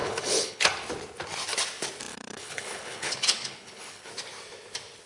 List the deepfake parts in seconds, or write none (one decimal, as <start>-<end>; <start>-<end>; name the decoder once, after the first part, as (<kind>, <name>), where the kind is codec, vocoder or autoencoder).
0.0-0.7 (codec, HILCodec); 2.1-4.1